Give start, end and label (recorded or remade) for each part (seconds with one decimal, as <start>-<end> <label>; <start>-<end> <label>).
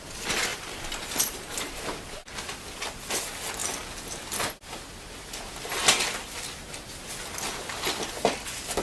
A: 0.0-0.5 recorded; 0.5-1.8 remade; 1.8-8.8 recorded